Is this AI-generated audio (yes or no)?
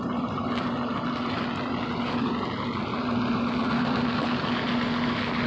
no